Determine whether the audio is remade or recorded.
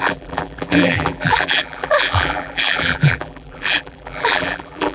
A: remade